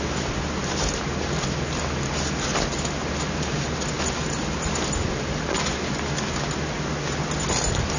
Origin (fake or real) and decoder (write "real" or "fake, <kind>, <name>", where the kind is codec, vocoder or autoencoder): real